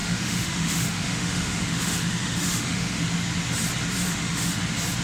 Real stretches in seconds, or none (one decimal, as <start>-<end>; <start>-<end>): 3.0-4.1; 4.6-5.0